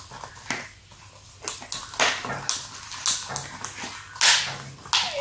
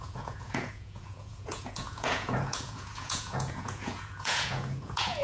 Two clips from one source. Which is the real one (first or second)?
first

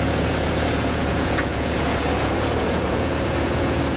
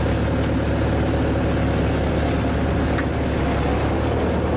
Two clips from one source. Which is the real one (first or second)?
second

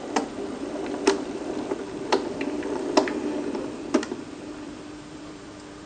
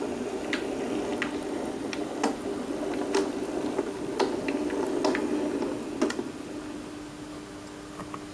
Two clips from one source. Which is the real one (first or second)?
second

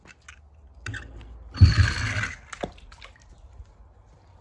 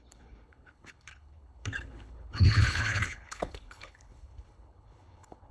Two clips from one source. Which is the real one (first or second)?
first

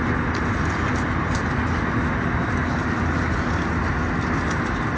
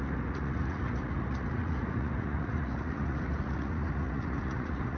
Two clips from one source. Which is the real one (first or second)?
first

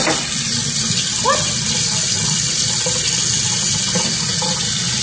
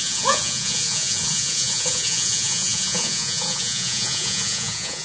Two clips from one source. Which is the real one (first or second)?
first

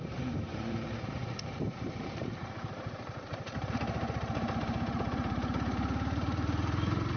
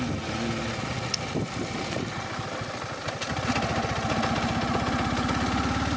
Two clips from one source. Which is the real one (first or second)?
second